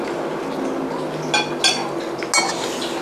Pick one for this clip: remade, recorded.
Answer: recorded